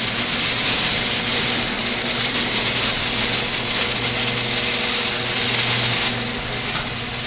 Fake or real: real